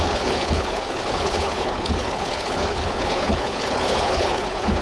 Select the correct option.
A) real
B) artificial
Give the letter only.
B